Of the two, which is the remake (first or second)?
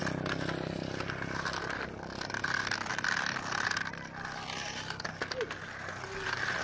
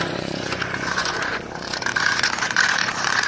second